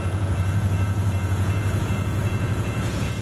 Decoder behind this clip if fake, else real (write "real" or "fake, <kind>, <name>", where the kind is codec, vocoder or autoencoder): fake, vocoder, Vocos